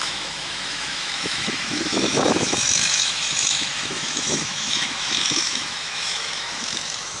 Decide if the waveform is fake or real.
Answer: fake